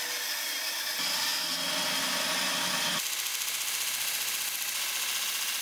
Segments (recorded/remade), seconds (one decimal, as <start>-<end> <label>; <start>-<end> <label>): 0.0-5.6 recorded